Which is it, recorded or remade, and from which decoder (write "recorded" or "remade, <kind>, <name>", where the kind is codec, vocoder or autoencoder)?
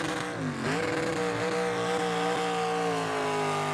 recorded